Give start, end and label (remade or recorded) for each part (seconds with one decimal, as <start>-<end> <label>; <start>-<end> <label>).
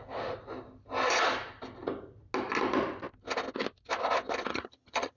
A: 0.0-4.5 recorded; 4.5-5.2 remade